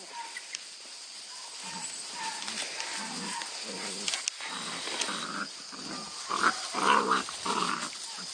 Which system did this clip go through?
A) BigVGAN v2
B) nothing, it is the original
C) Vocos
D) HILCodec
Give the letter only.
B